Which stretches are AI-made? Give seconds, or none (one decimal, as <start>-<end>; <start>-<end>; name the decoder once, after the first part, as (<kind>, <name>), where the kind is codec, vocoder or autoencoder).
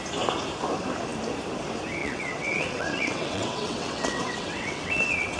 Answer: 2.0-5.4 (vocoder, WaveNeXt)